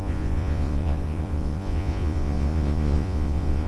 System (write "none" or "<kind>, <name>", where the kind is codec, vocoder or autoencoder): vocoder, Vocos